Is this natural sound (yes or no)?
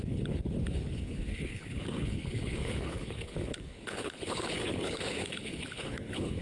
no